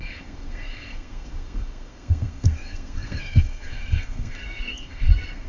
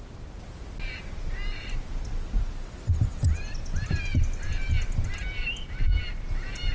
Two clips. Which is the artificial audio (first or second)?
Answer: first